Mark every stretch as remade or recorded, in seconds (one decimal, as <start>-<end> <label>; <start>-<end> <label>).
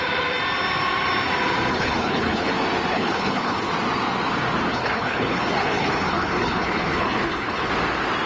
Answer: 0.0-1.7 recorded; 1.7-2.5 remade; 2.5-2.9 recorded; 2.9-3.7 remade; 3.7-4.7 recorded; 4.7-7.7 remade; 7.7-8.3 recorded